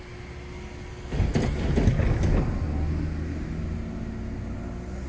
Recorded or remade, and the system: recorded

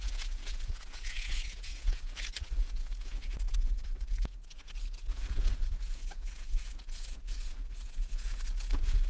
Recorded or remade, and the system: remade, vocoder, Vocos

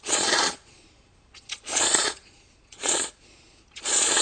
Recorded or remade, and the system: remade, vocoder, Vocos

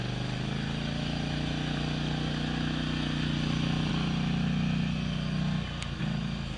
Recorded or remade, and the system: recorded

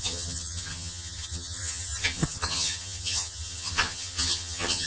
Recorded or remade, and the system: remade, vocoder, HiFi-GAN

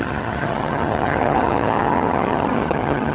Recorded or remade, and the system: remade, vocoder, HiFi-GAN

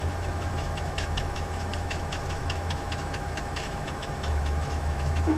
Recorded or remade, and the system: remade, autoencoder, DAC-VAE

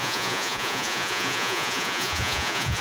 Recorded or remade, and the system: remade, vocoder, Vocos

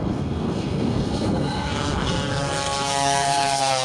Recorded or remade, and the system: remade, codec, SNAC